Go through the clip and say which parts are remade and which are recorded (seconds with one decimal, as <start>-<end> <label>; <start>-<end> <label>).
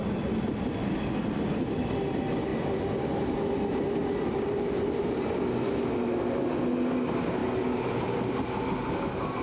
0.0-7.4 recorded; 7.4-8.7 remade; 8.7-9.4 recorded